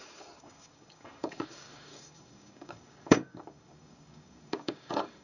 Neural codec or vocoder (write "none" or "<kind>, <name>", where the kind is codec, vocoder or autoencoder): codec, DAC